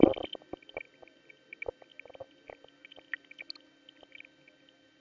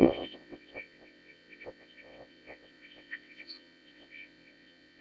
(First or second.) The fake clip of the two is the second